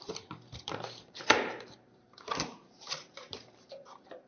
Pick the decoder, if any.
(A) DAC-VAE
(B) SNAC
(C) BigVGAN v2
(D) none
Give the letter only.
C